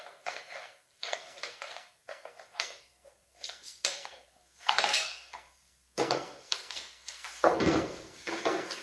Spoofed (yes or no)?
yes